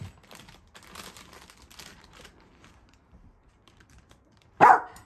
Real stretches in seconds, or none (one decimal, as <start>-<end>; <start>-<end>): 0.0-1.9